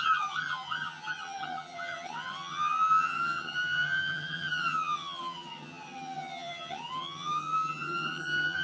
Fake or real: fake